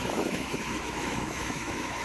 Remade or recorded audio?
remade